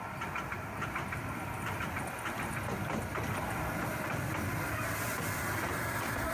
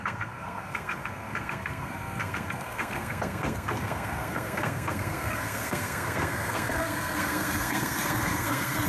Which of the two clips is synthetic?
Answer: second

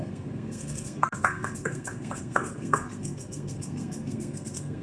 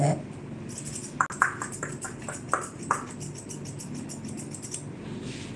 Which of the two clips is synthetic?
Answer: first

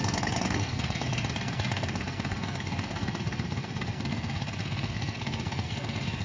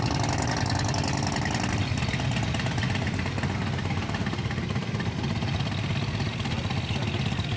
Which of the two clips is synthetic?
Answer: first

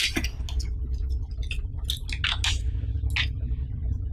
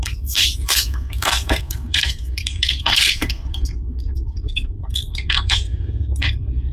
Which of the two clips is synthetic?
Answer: second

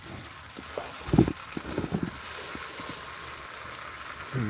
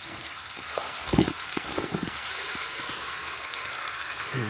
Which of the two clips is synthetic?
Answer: second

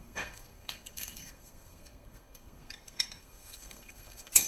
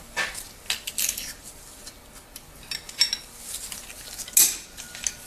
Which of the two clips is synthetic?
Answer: first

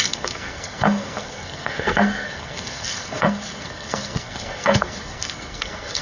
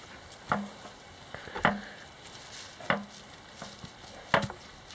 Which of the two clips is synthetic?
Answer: first